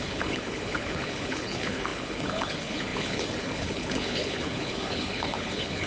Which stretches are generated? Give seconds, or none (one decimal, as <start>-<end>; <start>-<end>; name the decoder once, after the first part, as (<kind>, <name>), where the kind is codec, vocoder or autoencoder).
0.0-5.9 (codec, HILCodec)